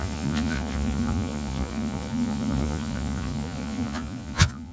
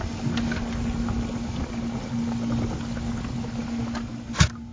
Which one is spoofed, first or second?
first